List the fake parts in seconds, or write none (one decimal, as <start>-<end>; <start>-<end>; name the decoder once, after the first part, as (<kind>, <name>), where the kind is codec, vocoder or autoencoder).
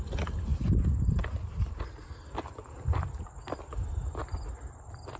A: none